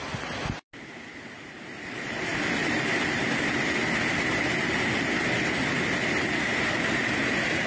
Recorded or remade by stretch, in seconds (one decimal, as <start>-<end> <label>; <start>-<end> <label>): 0.0-7.7 recorded